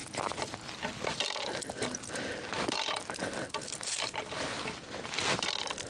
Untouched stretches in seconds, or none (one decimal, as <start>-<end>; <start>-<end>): 0.0-5.9

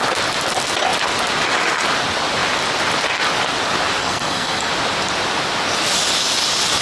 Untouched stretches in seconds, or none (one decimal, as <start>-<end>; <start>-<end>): 0.0-4.0; 4.7-6.8

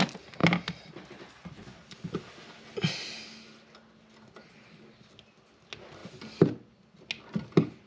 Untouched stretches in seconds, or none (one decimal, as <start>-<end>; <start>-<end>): 0.0-7.9

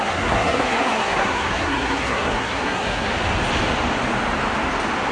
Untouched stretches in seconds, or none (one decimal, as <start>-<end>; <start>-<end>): 3.1-5.1

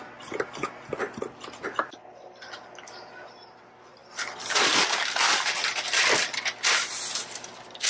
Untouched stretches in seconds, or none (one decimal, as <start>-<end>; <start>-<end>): 0.0-7.9

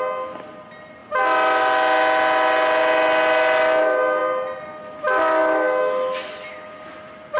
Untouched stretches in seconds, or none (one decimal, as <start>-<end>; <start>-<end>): 0.0-7.4

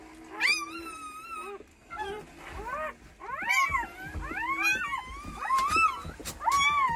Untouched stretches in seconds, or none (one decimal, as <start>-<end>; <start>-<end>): 0.0-1.7; 2.2-7.0